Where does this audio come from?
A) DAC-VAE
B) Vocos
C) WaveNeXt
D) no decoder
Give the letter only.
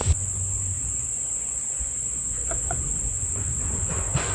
B